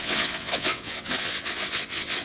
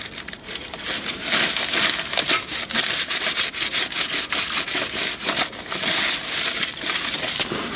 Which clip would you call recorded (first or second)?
second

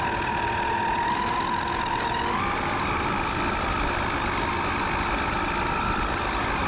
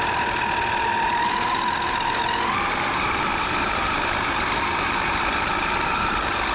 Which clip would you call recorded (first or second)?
first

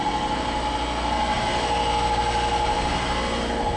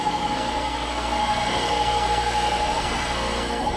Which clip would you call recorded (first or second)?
first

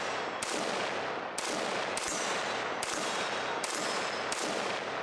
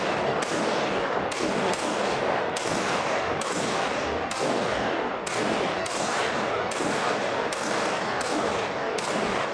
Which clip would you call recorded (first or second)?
first